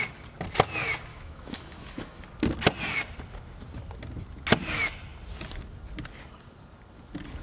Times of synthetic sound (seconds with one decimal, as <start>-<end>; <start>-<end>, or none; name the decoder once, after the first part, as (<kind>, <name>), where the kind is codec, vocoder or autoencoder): 1.1-2.2 (autoencoder, DAC-VAE)